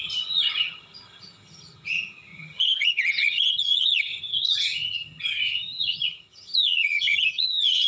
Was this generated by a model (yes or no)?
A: yes